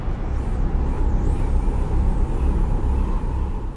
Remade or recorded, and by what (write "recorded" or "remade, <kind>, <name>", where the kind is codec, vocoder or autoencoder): recorded